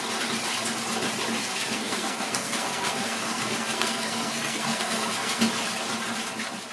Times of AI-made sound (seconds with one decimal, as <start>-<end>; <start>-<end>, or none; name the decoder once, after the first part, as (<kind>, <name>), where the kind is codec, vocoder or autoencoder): 1.4-5.4 (codec, SNAC)